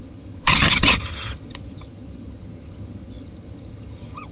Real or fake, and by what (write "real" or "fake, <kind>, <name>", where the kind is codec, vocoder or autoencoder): fake, vocoder, HiFi-GAN